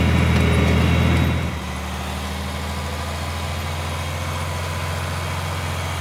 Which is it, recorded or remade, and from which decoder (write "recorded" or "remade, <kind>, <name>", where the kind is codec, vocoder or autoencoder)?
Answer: recorded